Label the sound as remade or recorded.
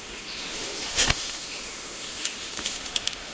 remade